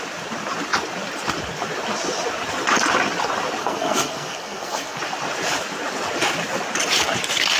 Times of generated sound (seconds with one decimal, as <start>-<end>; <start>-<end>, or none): 3.6-5.0